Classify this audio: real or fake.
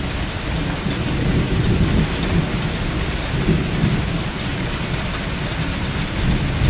real